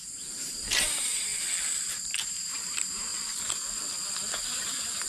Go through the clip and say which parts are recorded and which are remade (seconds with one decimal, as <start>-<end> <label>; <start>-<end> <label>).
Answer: 0.0-1.3 remade; 1.3-2.0 recorded; 2.0-3.1 remade; 3.1-4.6 recorded; 4.6-5.1 remade